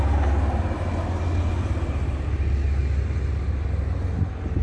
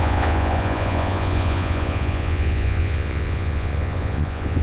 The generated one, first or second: second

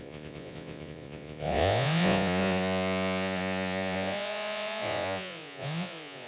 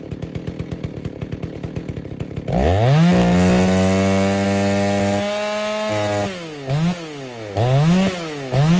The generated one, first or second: first